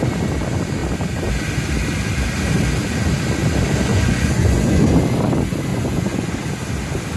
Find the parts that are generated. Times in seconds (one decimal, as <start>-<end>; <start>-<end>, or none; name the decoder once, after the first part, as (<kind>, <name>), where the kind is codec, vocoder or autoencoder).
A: 3.9-4.8 (vocoder, Vocos); 5.7-6.3